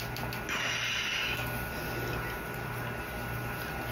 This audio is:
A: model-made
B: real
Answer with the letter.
B